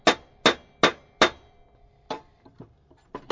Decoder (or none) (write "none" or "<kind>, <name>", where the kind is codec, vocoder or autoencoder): none